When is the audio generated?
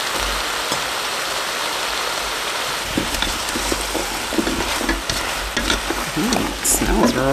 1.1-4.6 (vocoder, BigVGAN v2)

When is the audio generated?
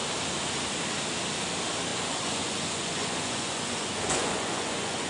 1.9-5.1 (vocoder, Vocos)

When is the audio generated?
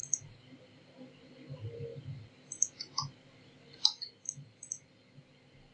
none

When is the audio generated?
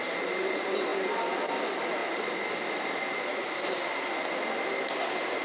none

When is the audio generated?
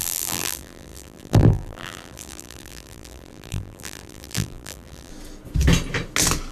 0.0-5.1 (vocoder, BigVGAN v2)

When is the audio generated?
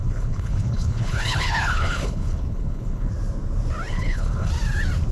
0.0-3.1 (codec, HILCodec); 3.9-4.5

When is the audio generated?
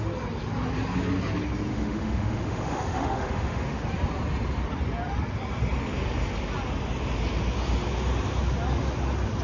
1.7-3.8 (autoencoder, DAC-VAE)